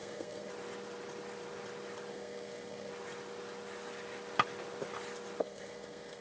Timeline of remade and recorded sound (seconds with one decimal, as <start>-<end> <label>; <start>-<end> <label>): 0.0-0.5 remade; 0.5-2.1 recorded; 2.1-2.9 remade; 2.9-5.4 recorded; 5.4-6.2 remade